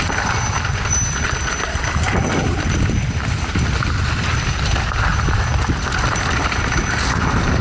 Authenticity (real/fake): real